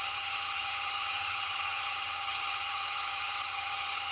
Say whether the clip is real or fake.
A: fake